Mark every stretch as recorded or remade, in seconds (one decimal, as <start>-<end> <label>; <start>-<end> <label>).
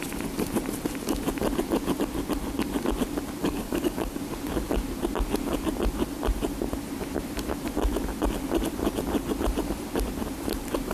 0.0-3.4 recorded; 3.4-4.2 remade; 4.2-10.9 recorded